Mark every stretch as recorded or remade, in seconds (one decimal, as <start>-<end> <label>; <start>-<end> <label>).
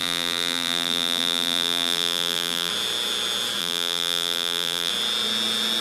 0.0-2.7 remade; 2.7-3.6 recorded; 3.6-4.9 remade; 4.9-5.8 recorded